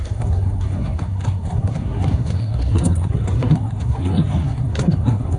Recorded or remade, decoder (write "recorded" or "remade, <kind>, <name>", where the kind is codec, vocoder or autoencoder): remade, codec, SNAC